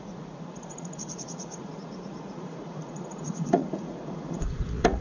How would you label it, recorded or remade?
remade